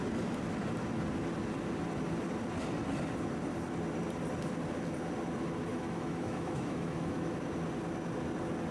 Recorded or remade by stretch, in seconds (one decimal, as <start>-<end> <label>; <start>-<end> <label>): 0.0-5.7 recorded; 5.7-7.3 remade; 7.3-8.7 recorded